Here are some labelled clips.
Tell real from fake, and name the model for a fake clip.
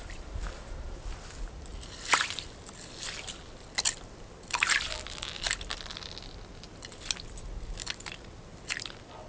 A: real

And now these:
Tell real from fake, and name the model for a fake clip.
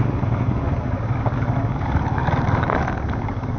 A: fake, codec, DAC